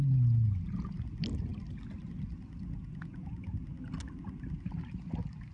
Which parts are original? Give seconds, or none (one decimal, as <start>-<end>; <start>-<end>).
0.0-2.8; 3.6-5.5